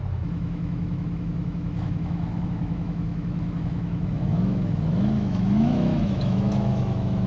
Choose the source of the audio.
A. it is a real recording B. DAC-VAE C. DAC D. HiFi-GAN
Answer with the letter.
B